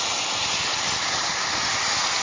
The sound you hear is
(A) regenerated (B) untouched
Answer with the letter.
B